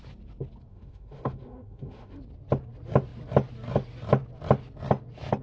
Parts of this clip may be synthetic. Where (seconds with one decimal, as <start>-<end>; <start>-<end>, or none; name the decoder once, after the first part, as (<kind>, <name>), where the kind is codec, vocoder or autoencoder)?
0.7-2.2 (autoencoder, DAC-VAE)